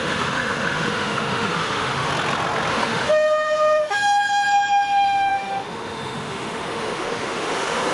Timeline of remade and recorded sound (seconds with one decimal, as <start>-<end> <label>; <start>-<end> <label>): 0.0-2.1 remade; 2.1-2.7 recorded; 2.7-7.9 remade